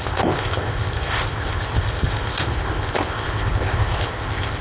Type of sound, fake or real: fake